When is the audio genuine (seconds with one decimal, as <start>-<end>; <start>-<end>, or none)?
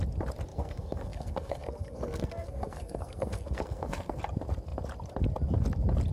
0.0-0.5; 4.2-6.1